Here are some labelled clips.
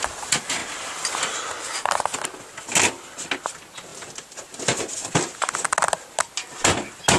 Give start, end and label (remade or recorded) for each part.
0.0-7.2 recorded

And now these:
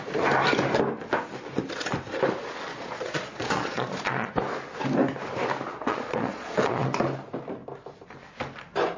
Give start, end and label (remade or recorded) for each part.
0.0-2.7 recorded; 2.7-4.3 remade; 4.3-5.7 recorded; 5.7-7.0 remade; 7.0-9.0 recorded